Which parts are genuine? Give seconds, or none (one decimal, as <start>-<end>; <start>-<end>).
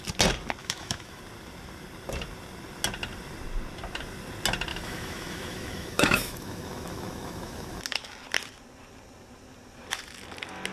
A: 0.0-0.6; 1.2-4.7; 7.8-10.7